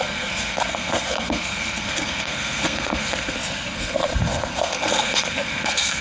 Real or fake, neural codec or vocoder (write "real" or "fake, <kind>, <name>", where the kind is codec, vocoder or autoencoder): fake, codec, SNAC